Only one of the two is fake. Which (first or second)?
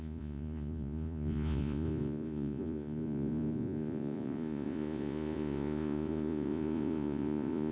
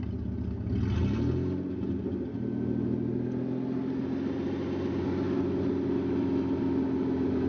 first